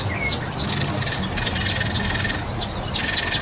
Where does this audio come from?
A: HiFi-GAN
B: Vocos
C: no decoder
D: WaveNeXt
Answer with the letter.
C